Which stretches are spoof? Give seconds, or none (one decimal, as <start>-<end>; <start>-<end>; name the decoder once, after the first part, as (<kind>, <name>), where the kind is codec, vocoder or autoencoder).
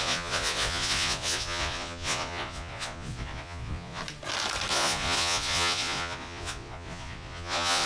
0.0-4.0 (vocoder, Vocos); 4.7-7.9